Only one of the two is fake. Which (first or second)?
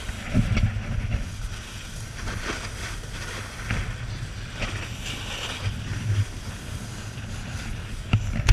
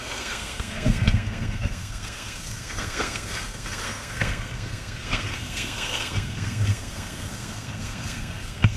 second